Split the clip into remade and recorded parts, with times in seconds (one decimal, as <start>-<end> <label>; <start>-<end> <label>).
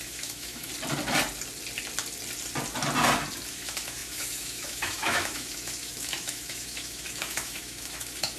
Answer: 0.0-0.7 remade; 0.7-3.5 recorded; 3.5-8.4 remade